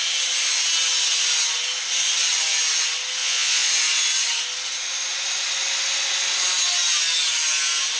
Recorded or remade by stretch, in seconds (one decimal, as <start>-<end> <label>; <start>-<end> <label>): 0.0-3.2 recorded; 3.2-3.7 remade; 3.7-8.0 recorded